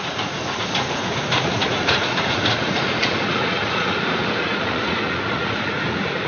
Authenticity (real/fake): fake